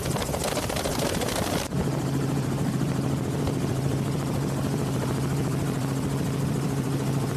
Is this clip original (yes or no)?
no